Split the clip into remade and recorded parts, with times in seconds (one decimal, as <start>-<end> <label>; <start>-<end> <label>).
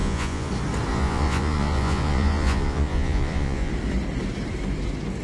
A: 0.0-0.5 remade; 0.5-0.9 recorded; 0.9-3.7 remade; 3.7-5.2 recorded